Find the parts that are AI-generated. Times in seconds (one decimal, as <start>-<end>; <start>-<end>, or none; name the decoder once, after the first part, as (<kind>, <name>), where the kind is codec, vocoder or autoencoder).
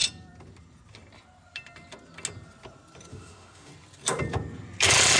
3.1-3.7 (autoencoder, DAC-VAE)